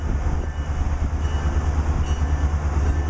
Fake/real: real